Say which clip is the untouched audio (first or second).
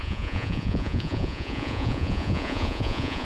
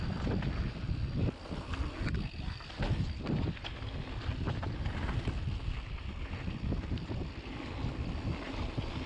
second